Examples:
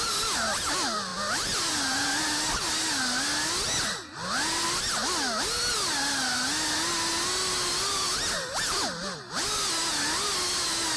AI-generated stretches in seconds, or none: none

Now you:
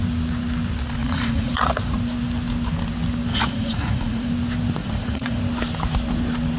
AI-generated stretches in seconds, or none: 1.0-1.6 (vocoder, Vocos); 3.3-4.3; 4.8-5.4

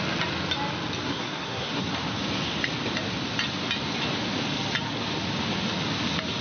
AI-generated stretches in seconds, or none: 1.0-1.9 (codec, SNAC)